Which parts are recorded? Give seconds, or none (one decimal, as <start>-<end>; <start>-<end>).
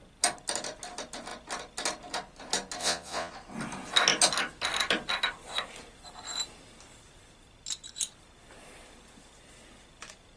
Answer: 0.0-2.8; 3.3-10.4